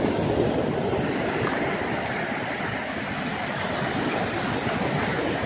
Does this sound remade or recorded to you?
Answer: recorded